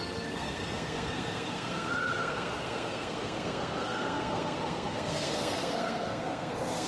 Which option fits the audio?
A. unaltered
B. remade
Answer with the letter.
B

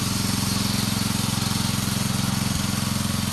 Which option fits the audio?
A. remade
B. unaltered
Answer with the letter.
B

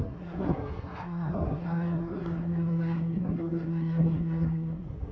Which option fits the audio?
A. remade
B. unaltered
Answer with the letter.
A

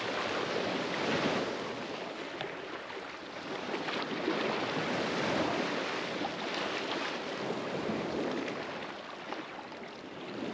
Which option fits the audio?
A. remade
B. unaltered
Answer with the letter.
B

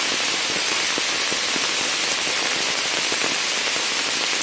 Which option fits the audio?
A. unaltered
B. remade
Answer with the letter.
A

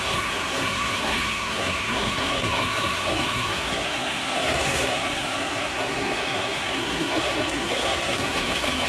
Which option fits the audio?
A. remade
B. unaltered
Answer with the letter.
A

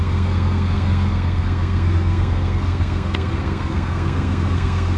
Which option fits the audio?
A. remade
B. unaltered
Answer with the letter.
A